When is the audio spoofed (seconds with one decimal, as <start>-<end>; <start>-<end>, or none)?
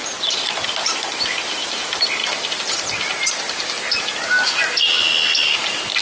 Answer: 2.2-4.0